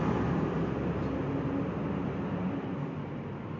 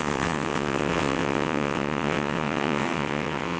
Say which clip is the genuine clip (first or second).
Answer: first